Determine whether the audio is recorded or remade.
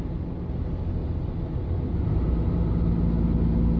recorded